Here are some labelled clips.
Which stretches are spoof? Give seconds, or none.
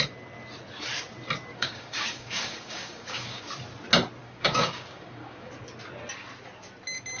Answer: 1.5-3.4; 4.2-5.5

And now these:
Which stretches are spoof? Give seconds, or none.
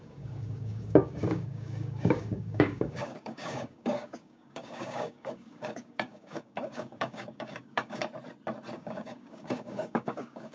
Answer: 0.0-8.0; 8.7-10.5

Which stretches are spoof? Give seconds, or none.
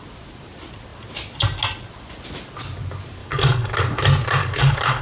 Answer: 3.2-3.8; 4.4-5.0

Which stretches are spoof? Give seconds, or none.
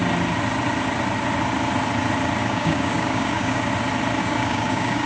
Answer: 2.4-3.7; 4.2-5.1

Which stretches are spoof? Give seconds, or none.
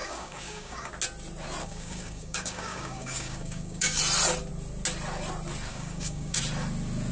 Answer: 0.0-0.9; 1.6-4.0; 5.7-6.4